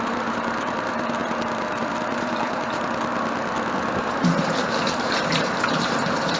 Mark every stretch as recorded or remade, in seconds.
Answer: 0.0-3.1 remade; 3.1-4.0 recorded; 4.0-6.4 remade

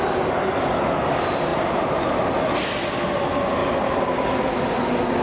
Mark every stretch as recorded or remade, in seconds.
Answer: 0.0-1.5 recorded; 1.5-2.2 remade; 2.2-3.6 recorded; 3.6-4.4 remade; 4.4-5.2 recorded

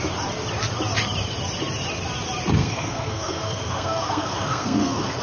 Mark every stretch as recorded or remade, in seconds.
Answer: 0.0-2.6 recorded; 2.6-5.2 remade

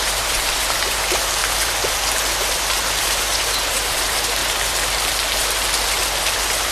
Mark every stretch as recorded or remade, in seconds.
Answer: 0.0-1.4 remade; 1.4-3.0 recorded; 3.0-4.4 remade; 4.4-6.7 recorded